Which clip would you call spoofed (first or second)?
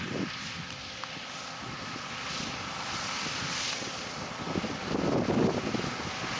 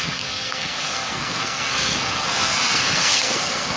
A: second